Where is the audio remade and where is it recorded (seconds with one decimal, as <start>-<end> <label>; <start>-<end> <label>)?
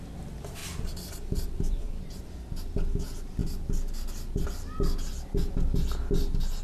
0.0-0.6 recorded; 0.6-2.0 remade; 2.0-6.6 recorded